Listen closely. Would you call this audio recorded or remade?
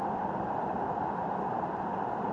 recorded